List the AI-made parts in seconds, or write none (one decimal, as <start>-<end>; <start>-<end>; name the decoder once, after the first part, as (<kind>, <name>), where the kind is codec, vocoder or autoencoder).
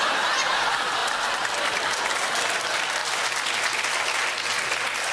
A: 1.0-2.0 (vocoder, BigVGAN v2); 3.0-3.7